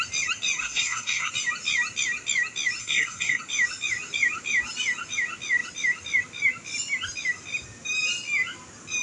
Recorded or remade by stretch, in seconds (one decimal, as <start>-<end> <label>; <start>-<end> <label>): 0.0-0.6 recorded; 0.6-1.3 remade; 1.3-2.8 recorded; 2.8-3.4 remade; 3.4-9.0 recorded